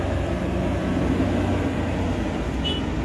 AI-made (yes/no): no